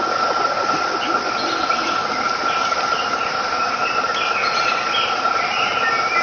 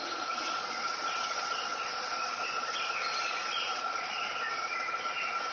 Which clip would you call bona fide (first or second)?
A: first